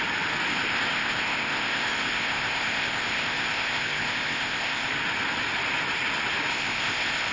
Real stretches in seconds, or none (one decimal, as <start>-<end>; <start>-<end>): 0.0-0.5; 4.9-6.5